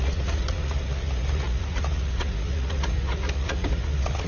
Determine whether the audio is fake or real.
fake